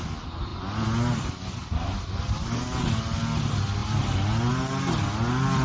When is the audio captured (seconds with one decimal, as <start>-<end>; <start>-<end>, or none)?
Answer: 0.0-5.6

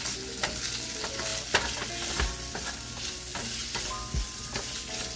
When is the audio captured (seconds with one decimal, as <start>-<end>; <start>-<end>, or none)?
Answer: 0.0-5.2

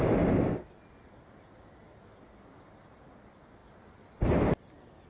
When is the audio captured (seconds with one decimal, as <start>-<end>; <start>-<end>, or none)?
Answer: 0.0-5.1

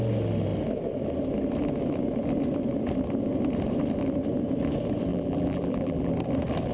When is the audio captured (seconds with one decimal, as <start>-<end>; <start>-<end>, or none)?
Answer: 0.0-5.1; 6.1-6.7